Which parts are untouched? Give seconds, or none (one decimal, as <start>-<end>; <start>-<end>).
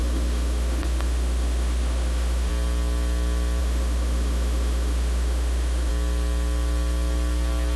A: 2.5-3.6; 5.9-7.8